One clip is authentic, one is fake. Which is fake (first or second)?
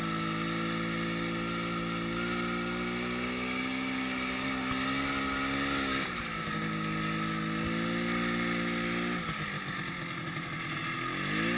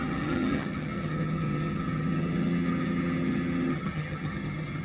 second